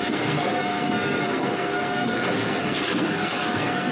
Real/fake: fake